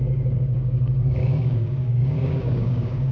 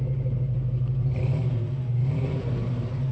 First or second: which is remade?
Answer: first